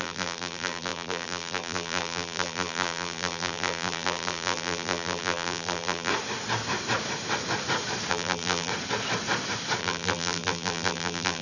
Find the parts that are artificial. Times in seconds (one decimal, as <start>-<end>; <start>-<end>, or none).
0.0-6.1; 8.1-8.7; 9.8-11.4